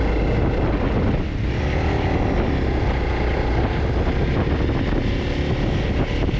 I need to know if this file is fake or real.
real